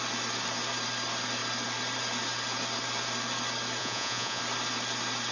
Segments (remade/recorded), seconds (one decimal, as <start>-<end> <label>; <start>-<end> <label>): 0.0-3.8 recorded; 3.8-4.4 remade; 4.4-5.3 recorded